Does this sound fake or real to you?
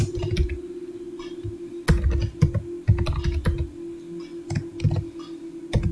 real